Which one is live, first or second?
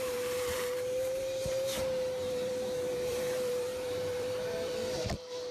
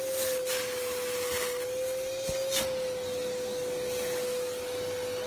second